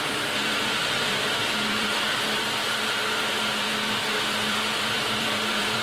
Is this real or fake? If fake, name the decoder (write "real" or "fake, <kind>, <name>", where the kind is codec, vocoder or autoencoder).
fake, vocoder, BigVGAN v2